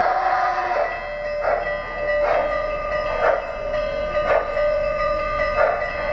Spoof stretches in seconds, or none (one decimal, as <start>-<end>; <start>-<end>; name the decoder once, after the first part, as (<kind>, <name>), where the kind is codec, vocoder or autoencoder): 0.0-0.7 (vocoder, Vocos); 2.4-6.1